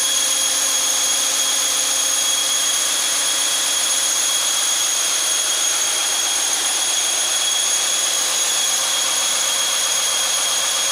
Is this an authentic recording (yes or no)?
no